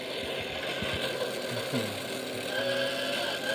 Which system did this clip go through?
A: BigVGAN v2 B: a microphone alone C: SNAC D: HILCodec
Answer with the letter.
B